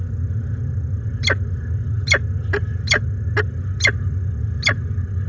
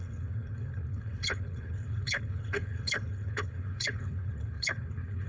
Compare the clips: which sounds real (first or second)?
first